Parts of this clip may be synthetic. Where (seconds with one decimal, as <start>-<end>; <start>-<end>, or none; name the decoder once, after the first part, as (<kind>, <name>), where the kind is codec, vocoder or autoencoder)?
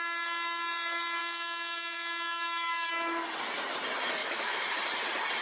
1.2-2.9 (autoencoder, DAC-VAE); 4.2-4.7